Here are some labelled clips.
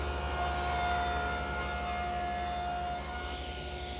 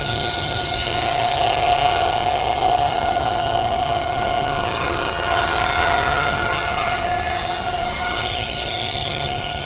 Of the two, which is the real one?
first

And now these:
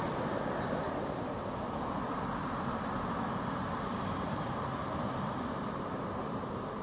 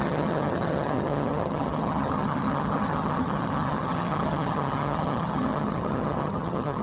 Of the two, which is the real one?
first